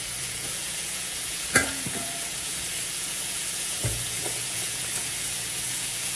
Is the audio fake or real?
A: fake